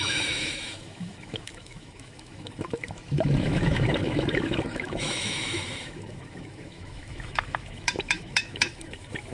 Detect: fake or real fake